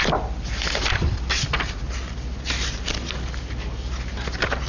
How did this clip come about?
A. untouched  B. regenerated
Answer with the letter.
A